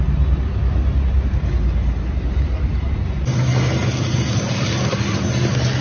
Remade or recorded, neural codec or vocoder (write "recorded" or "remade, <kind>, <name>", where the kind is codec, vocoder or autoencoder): recorded